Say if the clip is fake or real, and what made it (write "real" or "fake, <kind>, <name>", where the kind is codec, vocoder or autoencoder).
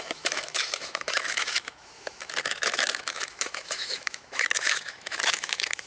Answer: fake, autoencoder, DAC-VAE